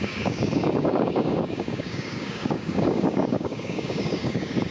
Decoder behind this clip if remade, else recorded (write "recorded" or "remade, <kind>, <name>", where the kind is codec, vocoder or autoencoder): remade, codec, DAC